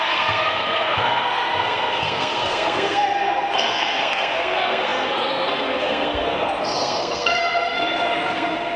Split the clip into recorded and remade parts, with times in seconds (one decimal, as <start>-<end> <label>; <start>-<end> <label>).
0.0-8.8 remade